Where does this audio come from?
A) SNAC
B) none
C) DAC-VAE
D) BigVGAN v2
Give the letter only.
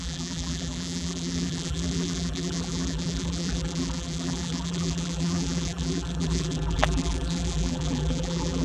D